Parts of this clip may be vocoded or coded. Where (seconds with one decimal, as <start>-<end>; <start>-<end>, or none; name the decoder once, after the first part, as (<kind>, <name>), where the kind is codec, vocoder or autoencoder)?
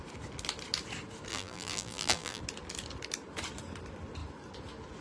1.3-2.4 (vocoder, BigVGAN v2)